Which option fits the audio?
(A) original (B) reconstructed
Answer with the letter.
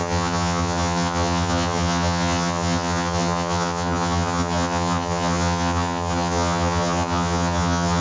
B